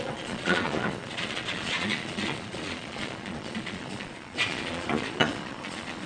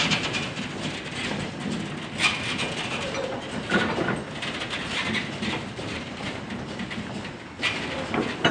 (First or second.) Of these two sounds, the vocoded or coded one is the first